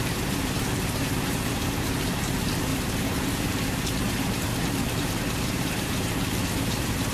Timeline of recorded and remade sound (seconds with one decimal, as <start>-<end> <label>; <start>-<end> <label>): 0.0-4.5 remade; 4.5-5.0 recorded; 5.0-7.1 remade